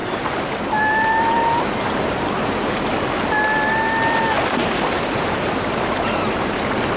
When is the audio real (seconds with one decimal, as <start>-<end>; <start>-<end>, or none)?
2.8-4.6; 6.1-7.0